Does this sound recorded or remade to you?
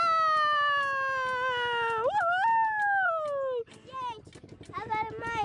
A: recorded